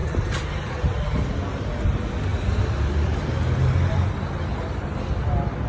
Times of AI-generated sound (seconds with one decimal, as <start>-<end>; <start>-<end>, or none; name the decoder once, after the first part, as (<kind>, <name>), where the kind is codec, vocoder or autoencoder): none